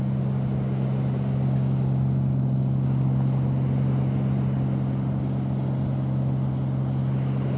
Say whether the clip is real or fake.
real